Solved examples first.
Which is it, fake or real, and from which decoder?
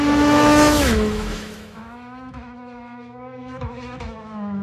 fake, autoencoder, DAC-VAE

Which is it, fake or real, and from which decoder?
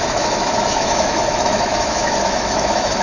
fake, autoencoder, DAC-VAE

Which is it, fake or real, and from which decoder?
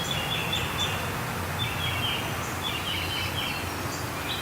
real